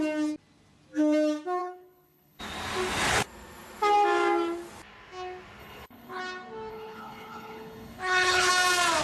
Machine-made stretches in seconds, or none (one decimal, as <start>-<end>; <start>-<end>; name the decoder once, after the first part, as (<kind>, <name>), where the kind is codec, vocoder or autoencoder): 1.6-2.4 (codec, HILCodec); 5.6-6.2; 6.7-8.5